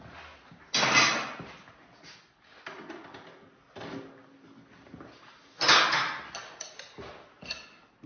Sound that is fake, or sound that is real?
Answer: real